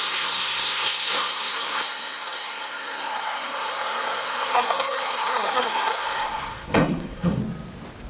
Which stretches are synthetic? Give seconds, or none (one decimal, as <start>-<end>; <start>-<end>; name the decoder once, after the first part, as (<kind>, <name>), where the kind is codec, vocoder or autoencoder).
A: 0.0-7.4 (codec, SNAC)